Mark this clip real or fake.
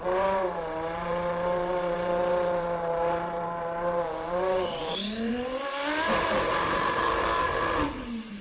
fake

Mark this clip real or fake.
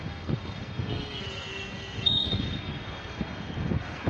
fake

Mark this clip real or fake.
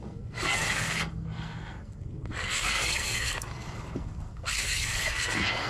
fake